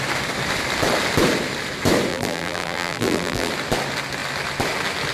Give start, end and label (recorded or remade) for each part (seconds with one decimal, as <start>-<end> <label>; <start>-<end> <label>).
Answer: 0.0-2.1 recorded; 2.1-3.5 remade; 3.5-5.1 recorded